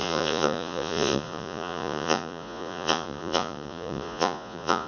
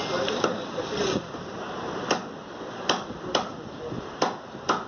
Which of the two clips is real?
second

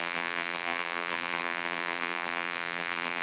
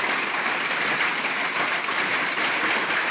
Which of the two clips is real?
second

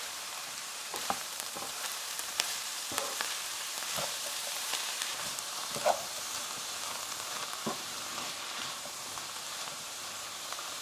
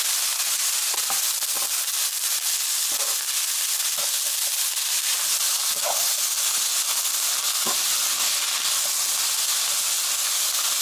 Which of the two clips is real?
second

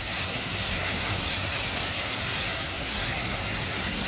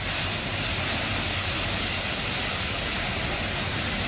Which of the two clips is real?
second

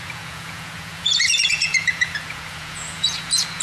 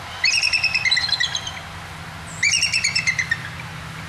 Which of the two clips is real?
second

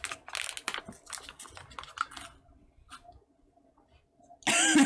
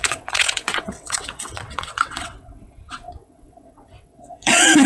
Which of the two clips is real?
first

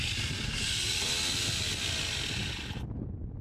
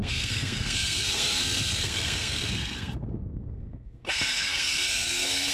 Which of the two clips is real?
first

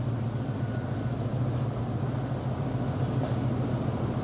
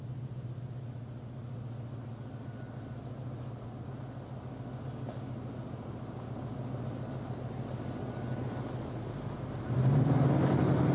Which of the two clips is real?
second